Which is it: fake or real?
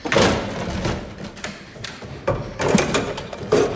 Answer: real